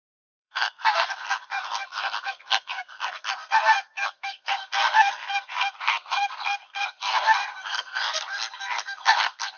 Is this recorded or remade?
remade